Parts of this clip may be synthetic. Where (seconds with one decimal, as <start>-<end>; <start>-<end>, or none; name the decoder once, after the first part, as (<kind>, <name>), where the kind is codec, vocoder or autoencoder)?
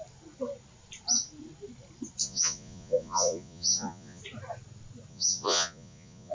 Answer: 2.2-4.2 (vocoder, Vocos); 5.1-6.3